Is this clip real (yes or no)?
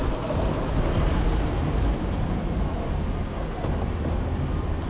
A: yes